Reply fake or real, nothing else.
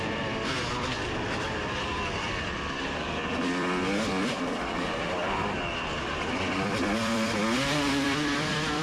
fake